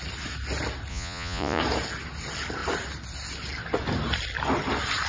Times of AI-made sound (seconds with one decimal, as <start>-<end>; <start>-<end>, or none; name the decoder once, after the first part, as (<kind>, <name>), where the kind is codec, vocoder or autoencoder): 0.9-1.6 (vocoder, Vocos)

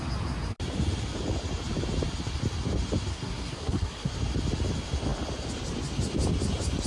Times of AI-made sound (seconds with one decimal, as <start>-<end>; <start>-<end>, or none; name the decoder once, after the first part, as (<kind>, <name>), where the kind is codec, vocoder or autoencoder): 3.1-4.1 (codec, SNAC)